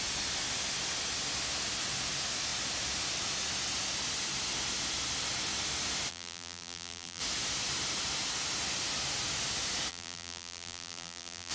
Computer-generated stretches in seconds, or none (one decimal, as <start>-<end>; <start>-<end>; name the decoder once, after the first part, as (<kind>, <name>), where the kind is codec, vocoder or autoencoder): 6.1-7.2 (vocoder, BigVGAN v2); 9.9-11.5